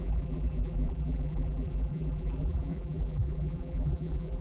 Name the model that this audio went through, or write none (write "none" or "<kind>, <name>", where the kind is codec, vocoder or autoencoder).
vocoder, BigVGAN v2